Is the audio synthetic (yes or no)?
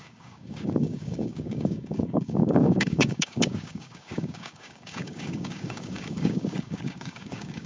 yes